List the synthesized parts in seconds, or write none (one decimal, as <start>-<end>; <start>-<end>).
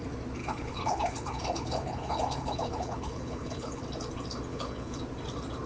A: 0.4-3.8; 4.5-5.0